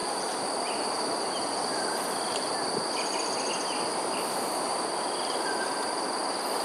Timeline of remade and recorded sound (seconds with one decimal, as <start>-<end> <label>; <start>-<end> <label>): 0.0-2.9 remade; 2.9-3.9 recorded; 3.9-4.9 remade; 4.9-6.6 recorded